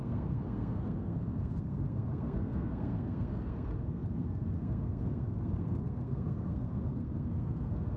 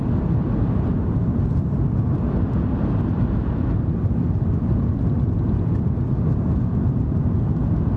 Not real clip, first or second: first